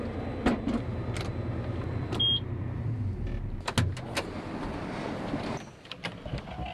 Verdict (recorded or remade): recorded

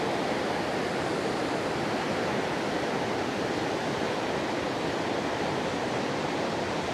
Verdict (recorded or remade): remade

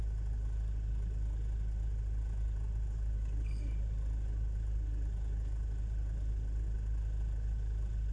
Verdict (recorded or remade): recorded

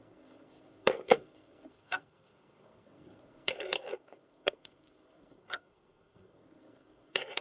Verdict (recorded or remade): remade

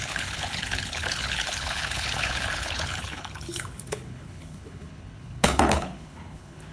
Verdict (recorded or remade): remade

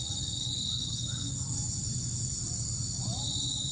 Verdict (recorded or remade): recorded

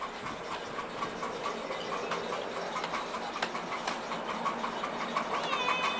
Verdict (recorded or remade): recorded